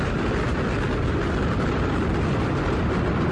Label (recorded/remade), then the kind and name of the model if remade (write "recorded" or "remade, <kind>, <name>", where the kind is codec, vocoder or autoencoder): recorded